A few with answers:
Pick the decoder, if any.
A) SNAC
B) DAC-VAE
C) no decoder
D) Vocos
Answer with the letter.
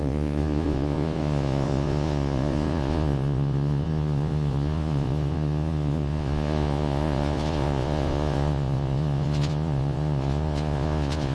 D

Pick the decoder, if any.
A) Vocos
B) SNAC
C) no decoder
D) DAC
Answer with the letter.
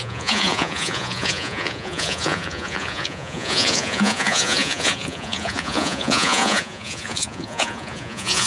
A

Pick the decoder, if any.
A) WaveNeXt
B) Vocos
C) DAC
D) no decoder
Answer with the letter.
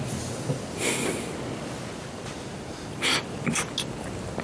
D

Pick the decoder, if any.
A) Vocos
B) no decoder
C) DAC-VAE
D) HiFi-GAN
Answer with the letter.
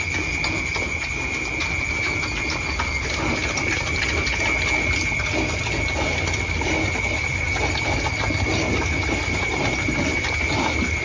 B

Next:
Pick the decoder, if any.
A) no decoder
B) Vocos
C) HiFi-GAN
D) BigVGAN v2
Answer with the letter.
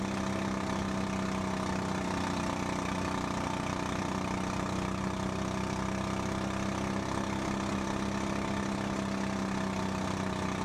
A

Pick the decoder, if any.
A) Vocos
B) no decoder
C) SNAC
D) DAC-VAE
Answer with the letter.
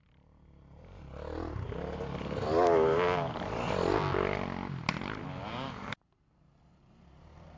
B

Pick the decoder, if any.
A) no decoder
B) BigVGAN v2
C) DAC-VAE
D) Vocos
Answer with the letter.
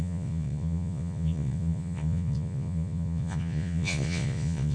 D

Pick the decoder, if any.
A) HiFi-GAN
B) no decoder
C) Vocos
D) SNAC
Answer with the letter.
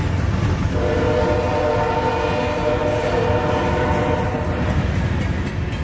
B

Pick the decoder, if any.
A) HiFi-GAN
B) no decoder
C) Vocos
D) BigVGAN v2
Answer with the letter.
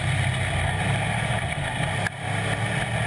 B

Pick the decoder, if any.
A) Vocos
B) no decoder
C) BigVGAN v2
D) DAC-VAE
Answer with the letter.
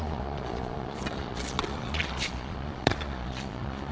A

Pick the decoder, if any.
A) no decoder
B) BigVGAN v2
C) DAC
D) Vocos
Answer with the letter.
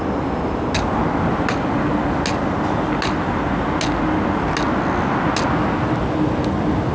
A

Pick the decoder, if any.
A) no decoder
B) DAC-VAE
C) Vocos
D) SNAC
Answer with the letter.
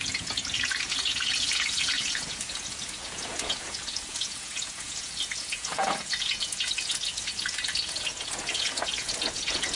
C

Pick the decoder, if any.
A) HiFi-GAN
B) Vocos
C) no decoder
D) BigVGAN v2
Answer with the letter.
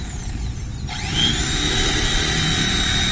C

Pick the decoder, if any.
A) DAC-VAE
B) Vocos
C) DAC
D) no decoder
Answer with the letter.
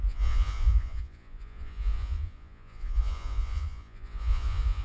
B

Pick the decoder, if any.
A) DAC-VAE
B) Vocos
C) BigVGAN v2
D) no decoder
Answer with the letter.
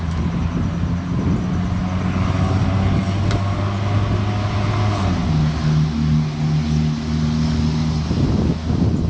D